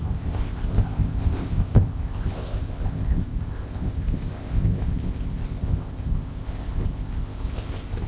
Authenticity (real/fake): fake